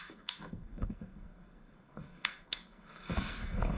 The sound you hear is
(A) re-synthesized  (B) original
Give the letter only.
A